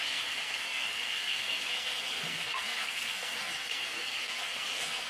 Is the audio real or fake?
fake